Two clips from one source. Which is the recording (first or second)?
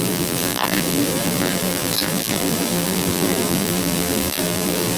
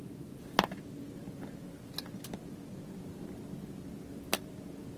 second